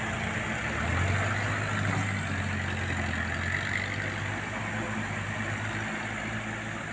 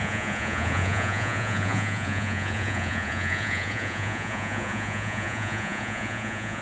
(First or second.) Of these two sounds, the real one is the first